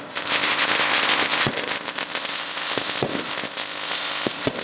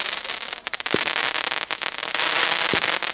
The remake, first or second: first